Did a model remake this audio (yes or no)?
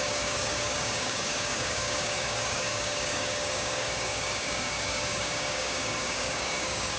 yes